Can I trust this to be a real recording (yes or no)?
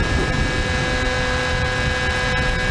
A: yes